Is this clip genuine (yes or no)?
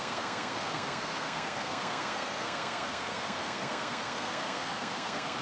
no